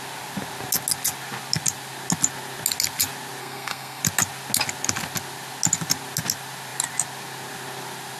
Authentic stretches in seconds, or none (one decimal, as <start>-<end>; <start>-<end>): 0.0-3.4; 4.0-8.2